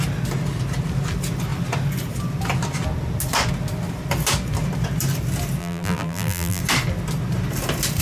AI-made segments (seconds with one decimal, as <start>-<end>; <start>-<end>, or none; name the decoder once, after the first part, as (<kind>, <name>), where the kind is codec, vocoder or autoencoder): 5.6-6.6 (vocoder, BigVGAN v2)